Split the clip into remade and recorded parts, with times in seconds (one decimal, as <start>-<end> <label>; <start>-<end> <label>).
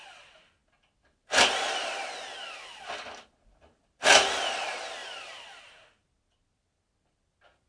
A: 0.0-7.7 recorded